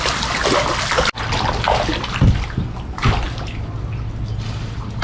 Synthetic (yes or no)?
no